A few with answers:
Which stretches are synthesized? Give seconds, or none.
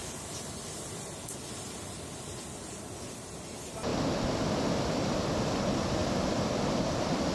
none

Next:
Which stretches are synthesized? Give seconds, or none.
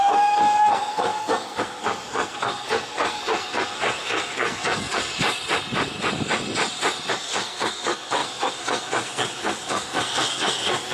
0.0-5.1 (codec, SNAC); 7.1-10.9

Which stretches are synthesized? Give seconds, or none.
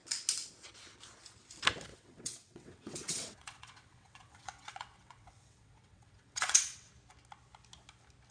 1.9-6.9 (vocoder, WaveNeXt)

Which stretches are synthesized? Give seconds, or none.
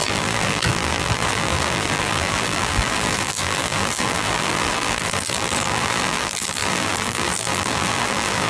0.0-8.5 (vocoder, BigVGAN v2)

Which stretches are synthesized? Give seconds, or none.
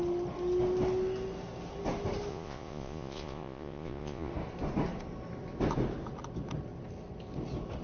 2.3-4.3 (vocoder, Vocos)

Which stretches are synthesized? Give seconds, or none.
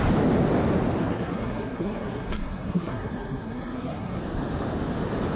1.0-4.2 (codec, SNAC)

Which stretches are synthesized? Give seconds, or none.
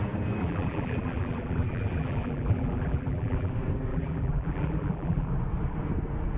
0.4-3.5 (vocoder, BigVGAN v2); 3.9-5.3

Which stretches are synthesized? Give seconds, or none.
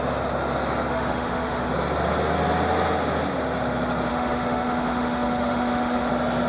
0.9-1.7 (autoencoder, DAC-VAE); 4.1-6.1